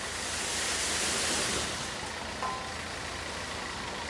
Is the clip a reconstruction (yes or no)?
no